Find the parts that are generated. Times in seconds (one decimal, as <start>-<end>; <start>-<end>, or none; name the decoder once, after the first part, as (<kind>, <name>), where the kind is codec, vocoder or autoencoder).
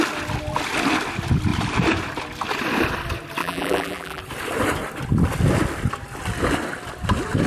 3.4-4.2 (vocoder, BigVGAN v2)